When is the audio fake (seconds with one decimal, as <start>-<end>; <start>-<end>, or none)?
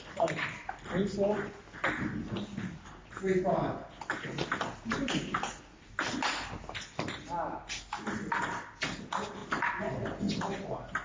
none